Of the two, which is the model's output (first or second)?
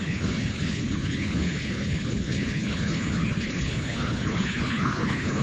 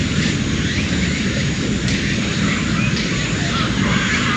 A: first